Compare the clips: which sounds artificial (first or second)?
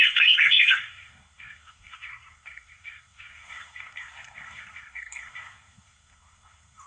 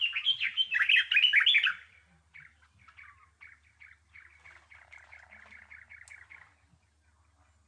first